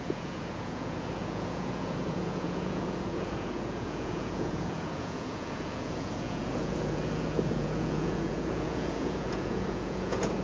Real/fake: fake